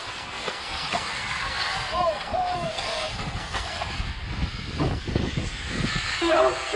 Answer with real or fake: fake